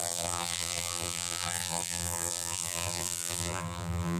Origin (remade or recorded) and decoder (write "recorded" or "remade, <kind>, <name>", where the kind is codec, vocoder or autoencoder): remade, vocoder, BigVGAN v2